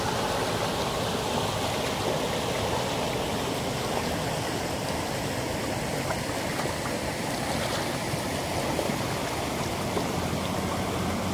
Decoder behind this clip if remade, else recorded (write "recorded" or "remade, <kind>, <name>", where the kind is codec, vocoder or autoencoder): recorded